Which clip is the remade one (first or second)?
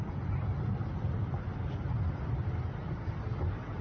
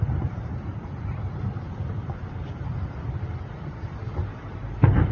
second